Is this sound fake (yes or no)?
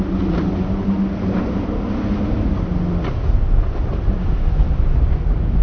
no